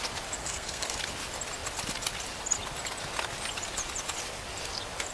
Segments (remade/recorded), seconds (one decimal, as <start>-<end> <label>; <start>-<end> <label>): 0.0-0.4 recorded; 0.4-1.0 remade; 1.0-5.1 recorded